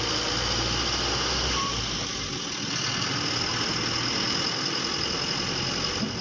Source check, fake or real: real